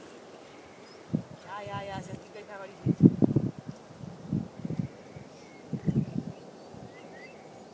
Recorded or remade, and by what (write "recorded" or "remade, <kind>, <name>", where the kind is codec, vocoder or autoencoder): recorded